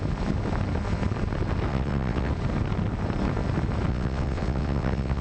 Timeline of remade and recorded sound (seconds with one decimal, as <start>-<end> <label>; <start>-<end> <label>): 0.0-1.7 recorded; 1.7-2.3 remade; 2.3-3.9 recorded; 3.9-5.2 remade